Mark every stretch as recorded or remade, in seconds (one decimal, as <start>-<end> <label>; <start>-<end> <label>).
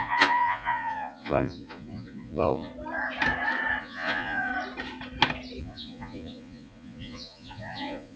0.0-2.7 remade; 2.7-3.8 recorded; 3.8-4.5 remade; 4.5-5.6 recorded; 5.6-8.2 remade